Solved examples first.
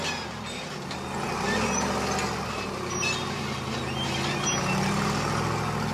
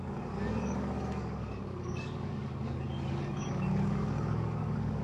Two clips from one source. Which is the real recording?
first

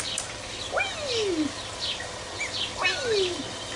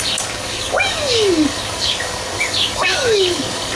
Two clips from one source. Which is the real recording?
first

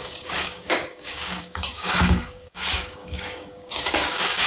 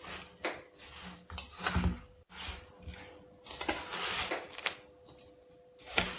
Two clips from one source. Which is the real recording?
second